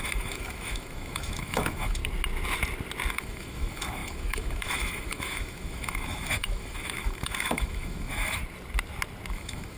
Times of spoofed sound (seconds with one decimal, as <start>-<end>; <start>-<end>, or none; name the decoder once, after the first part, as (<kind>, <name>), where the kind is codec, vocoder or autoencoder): 0.0-2.0 (autoencoder, DAC-VAE); 3.1-8.4; 9.3-9.8